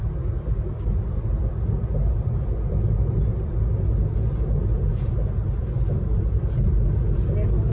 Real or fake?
real